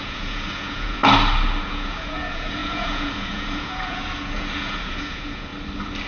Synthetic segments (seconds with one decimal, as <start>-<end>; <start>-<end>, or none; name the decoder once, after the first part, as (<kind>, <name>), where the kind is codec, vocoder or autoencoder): 0.0-1.0 (vocoder, Vocos); 1.6-5.5